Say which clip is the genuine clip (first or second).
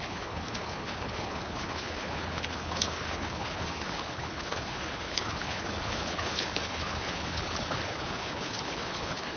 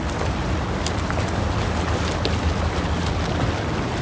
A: second